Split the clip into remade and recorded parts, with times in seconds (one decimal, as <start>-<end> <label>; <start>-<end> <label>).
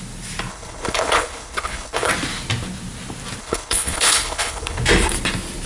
0.0-0.5 recorded; 0.5-2.1 remade; 2.1-3.4 recorded; 3.4-4.8 remade; 4.8-5.7 recorded